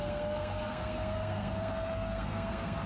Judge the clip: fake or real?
fake